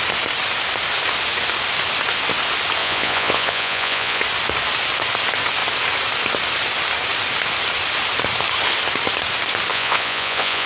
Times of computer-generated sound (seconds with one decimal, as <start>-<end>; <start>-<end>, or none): 2.8-4.2; 9.7-10.7

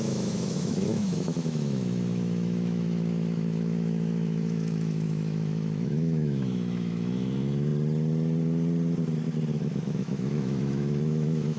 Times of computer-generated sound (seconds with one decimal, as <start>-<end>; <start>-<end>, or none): 0.0-7.7; 9.5-11.6

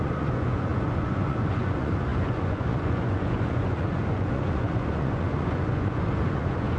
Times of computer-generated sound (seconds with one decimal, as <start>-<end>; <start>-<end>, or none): 0.0-6.8

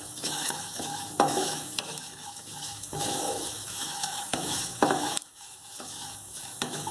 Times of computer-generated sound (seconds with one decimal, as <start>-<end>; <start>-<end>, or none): 0.0-6.9

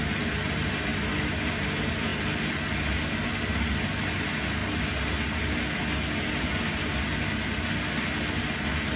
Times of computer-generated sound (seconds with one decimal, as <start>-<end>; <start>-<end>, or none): none

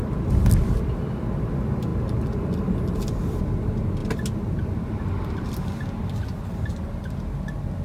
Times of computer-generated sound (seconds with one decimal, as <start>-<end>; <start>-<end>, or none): none

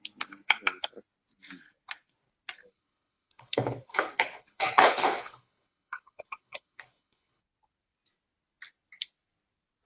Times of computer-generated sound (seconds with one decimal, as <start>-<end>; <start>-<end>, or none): 2.6-7.4

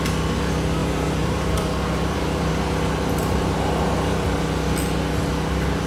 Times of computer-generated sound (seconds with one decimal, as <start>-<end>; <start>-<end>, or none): 0.8-2.5